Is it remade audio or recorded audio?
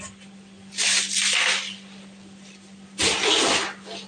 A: recorded